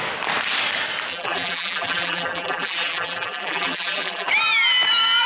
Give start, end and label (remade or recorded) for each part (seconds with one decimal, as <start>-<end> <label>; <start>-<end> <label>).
0.0-1.1 recorded; 1.1-4.3 remade; 4.3-5.3 recorded

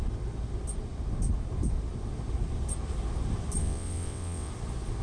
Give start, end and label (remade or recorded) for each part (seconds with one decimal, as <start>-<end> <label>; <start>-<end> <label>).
0.0-3.6 recorded; 3.6-4.5 remade; 4.5-5.0 recorded

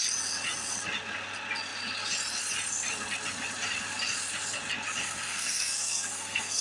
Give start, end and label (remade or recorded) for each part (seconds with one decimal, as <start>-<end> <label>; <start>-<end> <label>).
0.0-5.0 recorded; 5.0-6.6 remade

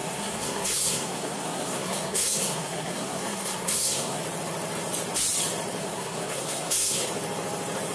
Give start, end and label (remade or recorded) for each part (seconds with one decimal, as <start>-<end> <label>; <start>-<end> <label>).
0.0-4.2 remade; 4.2-5.8 recorded; 5.8-7.1 remade; 7.1-7.9 recorded

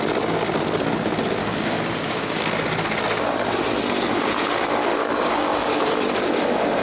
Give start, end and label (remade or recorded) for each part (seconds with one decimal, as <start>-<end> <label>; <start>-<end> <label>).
0.0-1.4 recorded; 1.4-2.4 remade; 2.4-5.0 recorded; 5.0-5.9 remade; 5.9-6.8 recorded

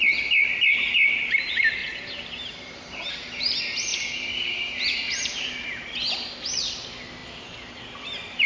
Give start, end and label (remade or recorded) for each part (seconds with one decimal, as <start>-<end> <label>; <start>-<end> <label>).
0.0-1.8 recorded; 1.8-3.1 remade; 3.1-3.9 recorded; 3.9-6.0 remade; 6.0-8.5 recorded

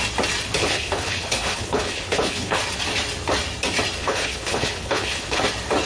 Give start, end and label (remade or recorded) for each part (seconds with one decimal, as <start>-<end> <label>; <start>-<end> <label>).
0.0-0.6 recorded; 0.6-2.6 remade; 2.6-4.0 recorded; 4.0-5.4 remade; 5.4-5.9 recorded

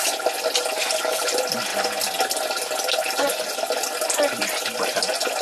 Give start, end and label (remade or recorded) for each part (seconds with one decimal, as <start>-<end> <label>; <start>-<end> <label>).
0.0-5.4 recorded